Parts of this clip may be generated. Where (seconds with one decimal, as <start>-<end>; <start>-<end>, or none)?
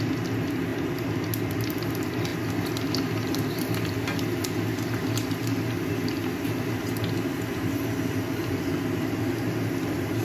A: none